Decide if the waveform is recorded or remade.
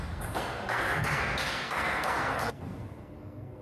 remade